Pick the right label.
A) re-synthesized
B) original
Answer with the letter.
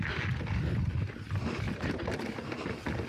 B